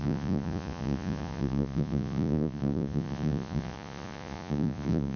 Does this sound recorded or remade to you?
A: remade